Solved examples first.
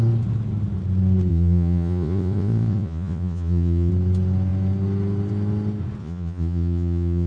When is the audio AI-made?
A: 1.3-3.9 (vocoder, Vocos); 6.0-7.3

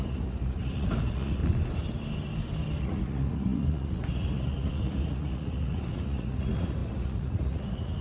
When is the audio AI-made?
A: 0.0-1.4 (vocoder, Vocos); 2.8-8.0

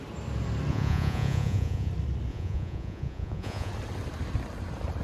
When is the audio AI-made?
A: 0.7-1.9 (vocoder, Vocos); 2.3-3.7